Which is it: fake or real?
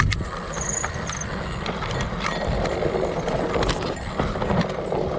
real